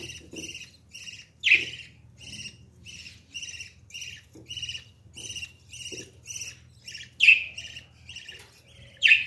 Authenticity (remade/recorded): recorded